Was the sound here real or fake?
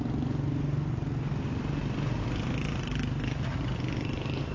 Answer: real